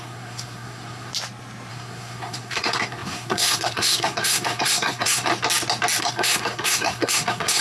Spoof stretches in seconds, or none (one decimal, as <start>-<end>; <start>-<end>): 0.0-1.1; 1.7-5.3; 6.0-7.6